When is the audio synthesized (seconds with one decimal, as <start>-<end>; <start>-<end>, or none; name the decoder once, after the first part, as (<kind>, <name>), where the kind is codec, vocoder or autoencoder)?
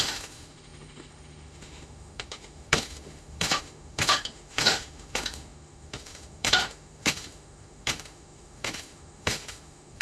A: 0.0-10.0 (autoencoder, DAC-VAE)